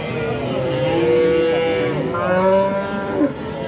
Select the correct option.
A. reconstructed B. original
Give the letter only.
B